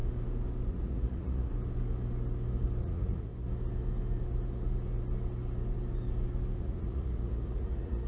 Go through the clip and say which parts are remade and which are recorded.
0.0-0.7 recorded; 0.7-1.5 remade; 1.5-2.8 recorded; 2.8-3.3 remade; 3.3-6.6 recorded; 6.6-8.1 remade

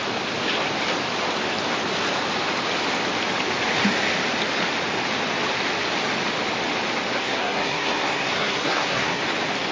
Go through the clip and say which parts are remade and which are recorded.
0.0-7.2 recorded; 7.2-9.2 remade; 9.2-9.7 recorded

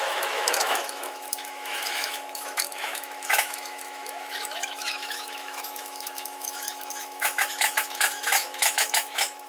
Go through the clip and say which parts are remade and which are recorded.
0.0-9.5 remade

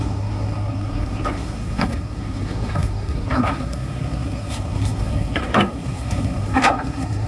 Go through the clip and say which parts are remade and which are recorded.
0.0-7.3 remade

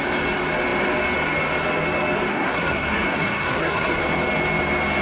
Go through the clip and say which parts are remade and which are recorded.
0.0-2.3 recorded; 2.3-4.0 remade; 4.0-5.0 recorded

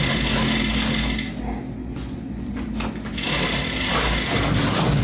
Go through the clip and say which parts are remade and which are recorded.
0.0-1.8 recorded; 1.8-2.7 remade; 2.7-5.0 recorded

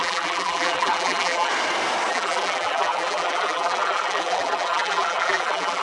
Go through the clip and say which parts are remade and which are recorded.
0.0-1.5 remade; 1.5-2.1 recorded; 2.1-5.8 remade